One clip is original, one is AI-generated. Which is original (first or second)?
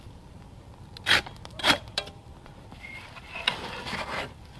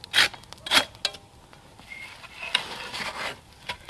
second